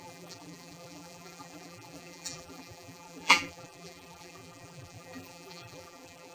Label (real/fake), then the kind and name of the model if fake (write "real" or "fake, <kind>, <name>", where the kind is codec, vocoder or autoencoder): fake, vocoder, BigVGAN v2